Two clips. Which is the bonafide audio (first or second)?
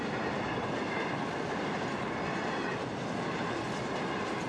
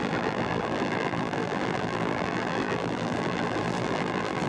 first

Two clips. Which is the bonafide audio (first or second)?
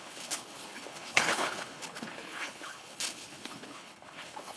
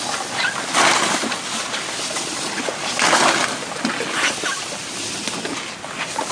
second